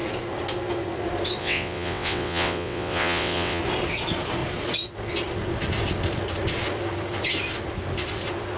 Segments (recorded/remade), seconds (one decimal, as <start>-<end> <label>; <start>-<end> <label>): 0.0-1.4 recorded; 1.4-3.6 remade; 3.6-8.6 recorded